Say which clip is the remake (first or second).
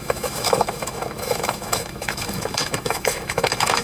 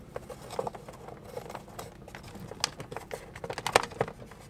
first